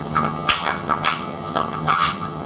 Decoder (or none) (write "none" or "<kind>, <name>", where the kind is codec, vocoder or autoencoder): vocoder, HiFi-GAN